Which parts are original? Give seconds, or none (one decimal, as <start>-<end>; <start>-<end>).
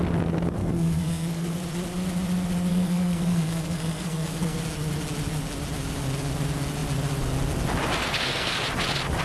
0.0-0.6; 1.6-2.7; 4.6-8.0; 8.6-9.2